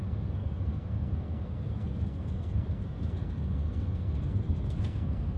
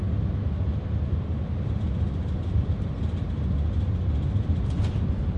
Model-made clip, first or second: first